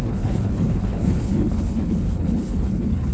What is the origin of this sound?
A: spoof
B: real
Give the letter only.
A